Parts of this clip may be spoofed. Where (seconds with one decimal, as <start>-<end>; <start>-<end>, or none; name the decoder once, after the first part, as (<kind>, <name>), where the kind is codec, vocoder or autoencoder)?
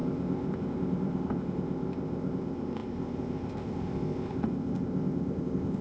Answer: 0.0-5.8 (codec, ZipCodec)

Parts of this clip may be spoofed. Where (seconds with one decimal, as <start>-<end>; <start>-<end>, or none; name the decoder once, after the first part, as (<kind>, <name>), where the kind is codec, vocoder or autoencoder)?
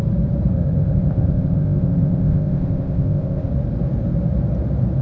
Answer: 0.5-3.5 (codec, ZipCodec)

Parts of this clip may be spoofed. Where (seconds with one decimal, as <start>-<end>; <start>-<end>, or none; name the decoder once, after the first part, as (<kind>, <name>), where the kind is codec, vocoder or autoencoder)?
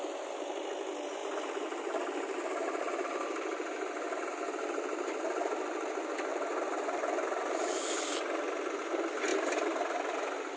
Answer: none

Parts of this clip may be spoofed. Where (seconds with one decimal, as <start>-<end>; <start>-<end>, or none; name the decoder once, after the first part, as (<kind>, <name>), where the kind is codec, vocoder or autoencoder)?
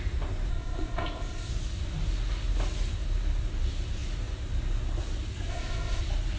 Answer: 0.5-1.5 (codec, ZipCodec); 5.5-6.0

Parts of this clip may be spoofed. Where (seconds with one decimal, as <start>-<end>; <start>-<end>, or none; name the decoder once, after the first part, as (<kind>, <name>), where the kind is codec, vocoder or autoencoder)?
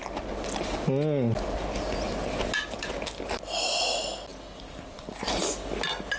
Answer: none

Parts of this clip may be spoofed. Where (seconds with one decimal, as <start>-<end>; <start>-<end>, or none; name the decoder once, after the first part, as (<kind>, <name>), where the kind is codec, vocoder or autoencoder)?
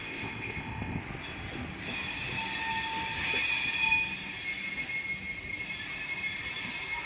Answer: 0.0-1.0 (codec, ZipCodec)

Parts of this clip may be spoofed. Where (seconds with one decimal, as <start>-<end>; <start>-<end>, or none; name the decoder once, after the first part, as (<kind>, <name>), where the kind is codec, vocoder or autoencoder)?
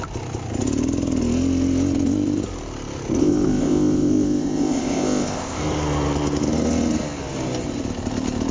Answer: 3.2-5.6 (codec, ZipCodec)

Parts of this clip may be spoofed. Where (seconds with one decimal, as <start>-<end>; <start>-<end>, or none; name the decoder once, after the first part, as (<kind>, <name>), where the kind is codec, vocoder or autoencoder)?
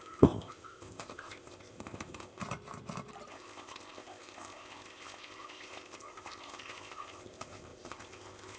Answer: 0.0-2.4 (codec, ZipCodec); 3.3-8.6